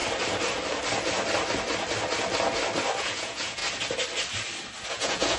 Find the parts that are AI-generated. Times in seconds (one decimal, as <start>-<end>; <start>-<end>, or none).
3.0-3.6; 4.9-5.4